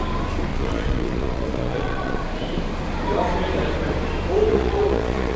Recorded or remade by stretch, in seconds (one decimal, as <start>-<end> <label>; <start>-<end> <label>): 0.0-0.5 recorded; 0.5-2.2 remade; 2.2-4.5 recorded; 4.5-5.4 remade